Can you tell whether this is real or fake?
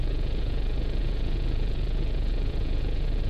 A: fake